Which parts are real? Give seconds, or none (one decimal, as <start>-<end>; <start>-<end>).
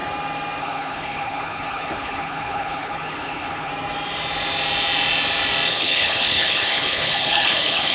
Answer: 0.0-0.6; 3.7-5.7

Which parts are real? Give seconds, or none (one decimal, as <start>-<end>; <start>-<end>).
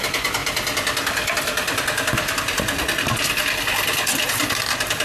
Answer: 0.0-5.0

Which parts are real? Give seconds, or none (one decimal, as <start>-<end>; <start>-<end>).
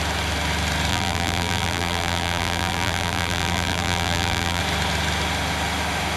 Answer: 0.0-0.9; 4.6-6.2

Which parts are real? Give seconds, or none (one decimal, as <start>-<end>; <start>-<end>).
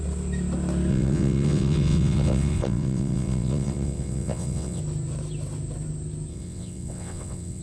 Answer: 0.0-0.9; 4.8-6.3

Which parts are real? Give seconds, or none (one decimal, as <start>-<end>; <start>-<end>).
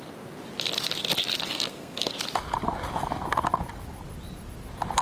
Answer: 0.0-1.5; 2.1-5.0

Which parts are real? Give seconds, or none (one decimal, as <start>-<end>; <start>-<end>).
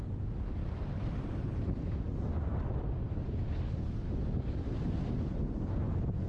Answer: 0.0-6.3